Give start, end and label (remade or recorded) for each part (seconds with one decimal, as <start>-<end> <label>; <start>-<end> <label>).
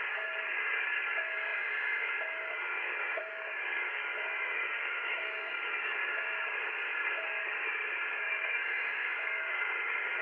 0.0-10.2 remade